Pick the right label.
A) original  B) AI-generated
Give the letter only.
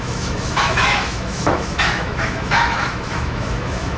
B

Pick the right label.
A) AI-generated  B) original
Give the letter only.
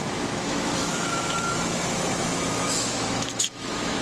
A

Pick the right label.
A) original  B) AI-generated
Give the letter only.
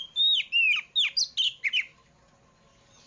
A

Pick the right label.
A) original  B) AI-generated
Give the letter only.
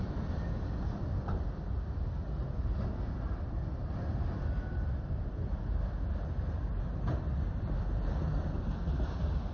A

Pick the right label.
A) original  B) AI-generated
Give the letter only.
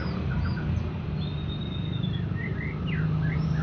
A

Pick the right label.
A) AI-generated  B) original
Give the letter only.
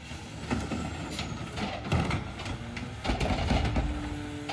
B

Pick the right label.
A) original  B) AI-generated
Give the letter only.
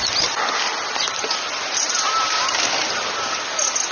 A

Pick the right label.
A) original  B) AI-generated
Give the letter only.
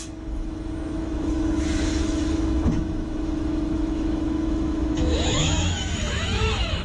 B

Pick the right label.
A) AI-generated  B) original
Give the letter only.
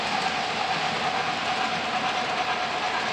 B